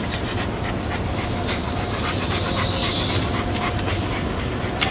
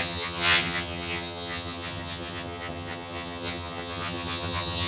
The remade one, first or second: second